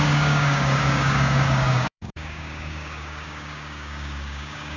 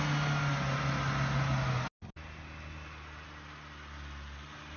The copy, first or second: first